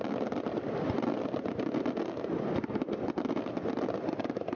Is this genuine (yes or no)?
yes